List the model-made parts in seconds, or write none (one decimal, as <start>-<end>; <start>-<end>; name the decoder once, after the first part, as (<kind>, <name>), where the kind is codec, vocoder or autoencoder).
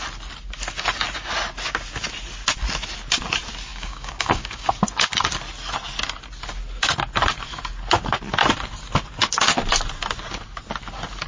3.7-4.7 (codec, DAC)